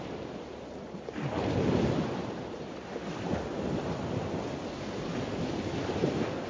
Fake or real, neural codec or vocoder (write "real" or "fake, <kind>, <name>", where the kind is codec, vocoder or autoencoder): real